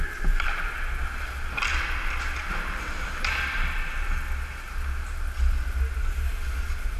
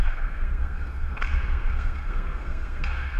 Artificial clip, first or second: second